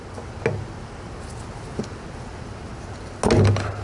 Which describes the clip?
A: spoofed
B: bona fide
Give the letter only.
B